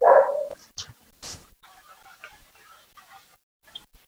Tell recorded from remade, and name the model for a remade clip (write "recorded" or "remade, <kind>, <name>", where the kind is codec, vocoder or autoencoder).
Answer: remade, vocoder, BigVGAN v2